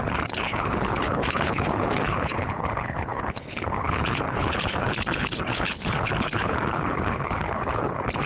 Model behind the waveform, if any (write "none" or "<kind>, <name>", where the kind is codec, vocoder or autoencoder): codec, HILCodec